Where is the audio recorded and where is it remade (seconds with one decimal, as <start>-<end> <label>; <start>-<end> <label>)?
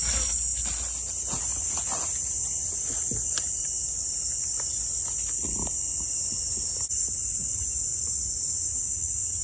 0.0-7.9 recorded; 7.9-9.4 remade